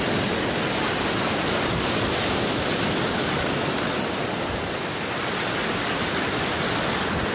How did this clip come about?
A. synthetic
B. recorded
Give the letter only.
B